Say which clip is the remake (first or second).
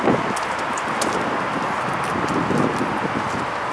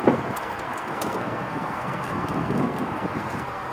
second